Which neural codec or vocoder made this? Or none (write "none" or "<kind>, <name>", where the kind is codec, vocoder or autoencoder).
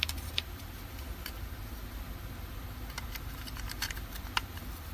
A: none